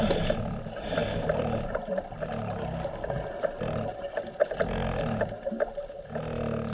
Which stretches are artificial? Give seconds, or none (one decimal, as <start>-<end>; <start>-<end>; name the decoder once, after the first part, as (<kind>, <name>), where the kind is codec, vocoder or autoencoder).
none

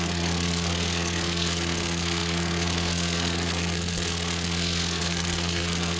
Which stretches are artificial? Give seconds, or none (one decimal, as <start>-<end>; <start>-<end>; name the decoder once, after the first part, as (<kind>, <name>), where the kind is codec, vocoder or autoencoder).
0.0-6.0 (codec, SNAC)

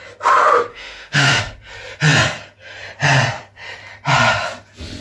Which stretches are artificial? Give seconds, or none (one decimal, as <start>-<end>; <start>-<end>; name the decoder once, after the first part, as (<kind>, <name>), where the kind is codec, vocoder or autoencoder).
0.7-1.4 (autoencoder, DAC-VAE)

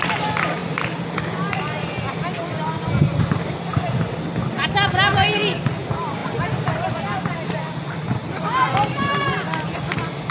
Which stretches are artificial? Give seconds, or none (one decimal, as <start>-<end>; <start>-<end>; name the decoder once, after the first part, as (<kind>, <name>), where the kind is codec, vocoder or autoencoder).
none

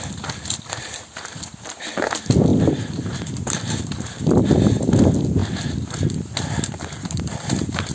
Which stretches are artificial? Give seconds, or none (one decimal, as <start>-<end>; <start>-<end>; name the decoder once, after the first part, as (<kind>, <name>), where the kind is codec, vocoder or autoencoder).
none

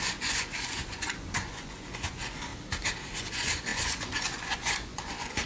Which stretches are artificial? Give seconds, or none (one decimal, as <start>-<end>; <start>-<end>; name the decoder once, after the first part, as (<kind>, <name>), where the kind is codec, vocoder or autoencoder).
0.0-2.5 (vocoder, Vocos); 3.2-5.5

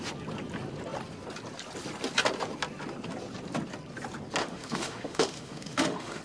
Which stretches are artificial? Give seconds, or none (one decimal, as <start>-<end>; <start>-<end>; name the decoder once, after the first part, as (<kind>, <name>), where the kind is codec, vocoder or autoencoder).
4.4-6.2 (autoencoder, DAC-VAE)

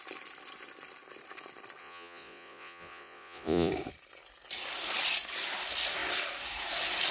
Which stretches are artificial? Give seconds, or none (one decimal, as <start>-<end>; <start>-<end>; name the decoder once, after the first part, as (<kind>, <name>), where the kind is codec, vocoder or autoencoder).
1.8-3.7 (vocoder, Vocos)